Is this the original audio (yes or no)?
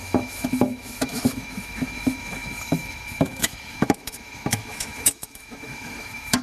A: no